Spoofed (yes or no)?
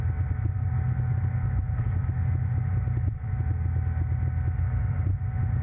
no